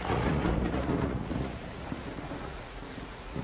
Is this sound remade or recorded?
remade